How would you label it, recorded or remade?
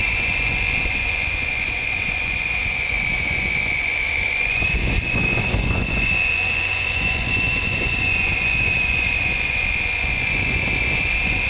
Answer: remade